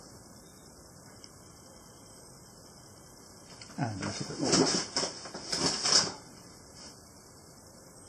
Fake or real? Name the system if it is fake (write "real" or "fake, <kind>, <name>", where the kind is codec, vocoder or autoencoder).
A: real